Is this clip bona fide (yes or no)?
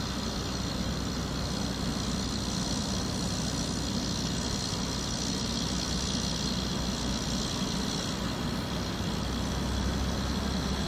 yes